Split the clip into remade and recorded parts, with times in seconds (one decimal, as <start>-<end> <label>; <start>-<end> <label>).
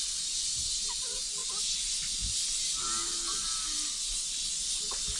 0.0-5.2 recorded